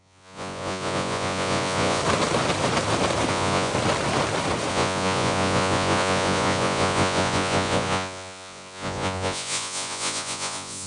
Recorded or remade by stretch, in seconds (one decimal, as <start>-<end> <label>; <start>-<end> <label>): 0.0-2.0 remade; 2.0-3.3 recorded; 3.3-3.7 remade; 3.7-4.7 recorded; 4.7-10.9 remade